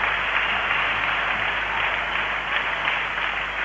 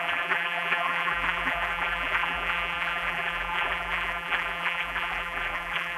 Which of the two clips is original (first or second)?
first